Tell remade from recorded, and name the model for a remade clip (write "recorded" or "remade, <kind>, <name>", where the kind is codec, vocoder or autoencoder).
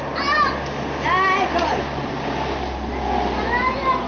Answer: recorded